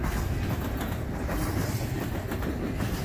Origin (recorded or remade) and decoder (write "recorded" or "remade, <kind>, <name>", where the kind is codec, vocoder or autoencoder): recorded